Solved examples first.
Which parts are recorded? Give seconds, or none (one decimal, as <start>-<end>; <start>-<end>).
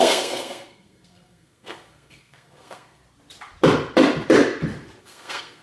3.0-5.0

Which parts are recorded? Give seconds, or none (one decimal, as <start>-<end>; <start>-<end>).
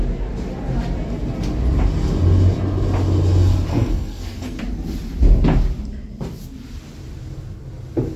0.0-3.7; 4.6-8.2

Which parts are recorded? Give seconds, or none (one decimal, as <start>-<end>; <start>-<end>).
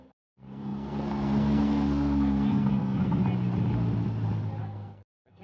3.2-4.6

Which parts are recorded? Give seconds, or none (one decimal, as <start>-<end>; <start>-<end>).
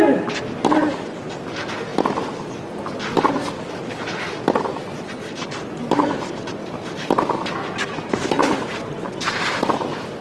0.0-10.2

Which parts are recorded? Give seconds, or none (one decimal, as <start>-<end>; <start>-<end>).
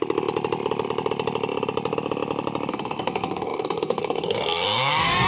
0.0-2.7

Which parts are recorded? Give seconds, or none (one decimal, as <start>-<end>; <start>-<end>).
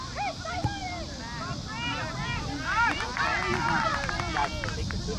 0.0-5.2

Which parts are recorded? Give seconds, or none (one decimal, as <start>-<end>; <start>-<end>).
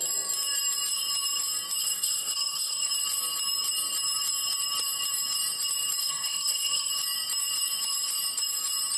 0.0-1.8; 2.9-6.0; 6.9-9.0